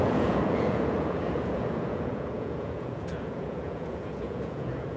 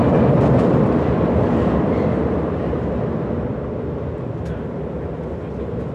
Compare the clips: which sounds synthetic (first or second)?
first